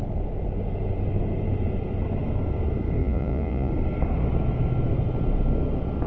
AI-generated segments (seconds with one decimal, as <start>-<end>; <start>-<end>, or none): 3.0-3.7